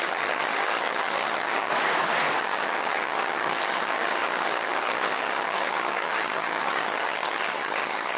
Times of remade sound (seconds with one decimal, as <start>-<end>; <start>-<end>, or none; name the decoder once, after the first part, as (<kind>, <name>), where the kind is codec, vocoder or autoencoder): 0.0-1.7 (vocoder, HiFi-GAN); 2.4-8.2